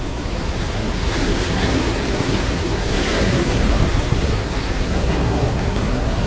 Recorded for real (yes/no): no